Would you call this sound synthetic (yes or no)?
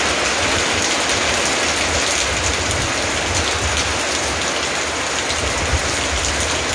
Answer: no